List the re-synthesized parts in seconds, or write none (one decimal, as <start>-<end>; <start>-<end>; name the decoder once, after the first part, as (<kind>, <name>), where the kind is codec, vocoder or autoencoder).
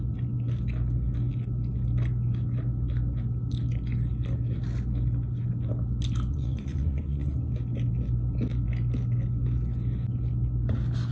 6.3-7.5 (vocoder, Vocos)